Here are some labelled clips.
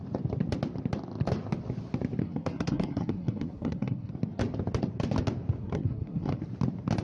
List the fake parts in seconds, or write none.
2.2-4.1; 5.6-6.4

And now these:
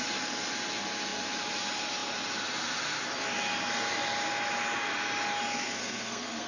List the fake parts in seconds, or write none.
5.8-6.5